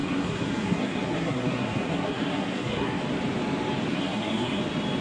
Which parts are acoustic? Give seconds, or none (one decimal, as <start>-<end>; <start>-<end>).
3.0-3.9; 4.6-5.0